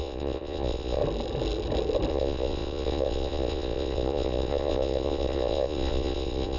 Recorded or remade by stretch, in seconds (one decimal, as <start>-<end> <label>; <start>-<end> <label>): 0.0-1.0 remade; 1.0-2.1 recorded; 2.1-6.6 remade